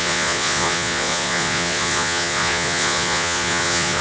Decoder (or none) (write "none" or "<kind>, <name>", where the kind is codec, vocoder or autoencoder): vocoder, Vocos